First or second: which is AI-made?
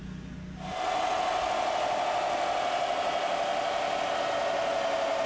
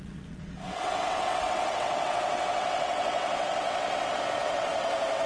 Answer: second